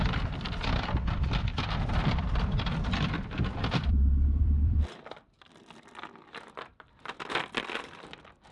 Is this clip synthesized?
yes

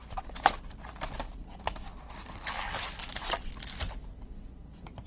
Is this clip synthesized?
no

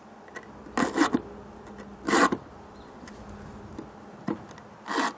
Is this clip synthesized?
no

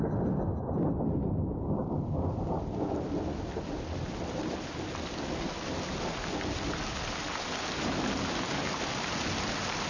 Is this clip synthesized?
no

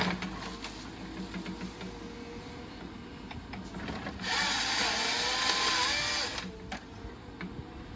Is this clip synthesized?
no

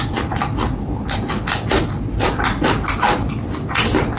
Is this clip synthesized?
no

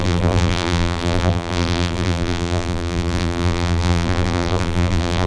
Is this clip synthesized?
yes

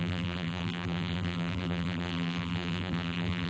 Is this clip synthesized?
yes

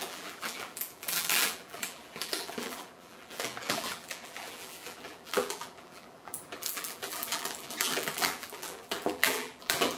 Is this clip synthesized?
yes